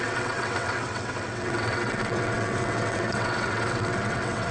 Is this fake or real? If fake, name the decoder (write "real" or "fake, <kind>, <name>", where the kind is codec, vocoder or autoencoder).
fake, vocoder, WaveNeXt